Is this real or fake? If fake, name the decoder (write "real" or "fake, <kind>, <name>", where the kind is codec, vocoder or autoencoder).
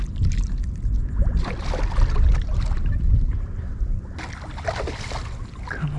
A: real